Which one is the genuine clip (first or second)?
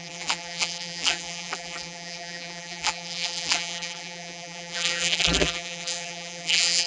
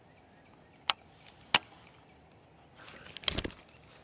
second